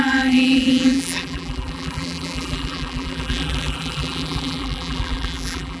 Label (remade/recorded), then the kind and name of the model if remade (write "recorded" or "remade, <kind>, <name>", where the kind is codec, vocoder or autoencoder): remade, vocoder, BigVGAN v2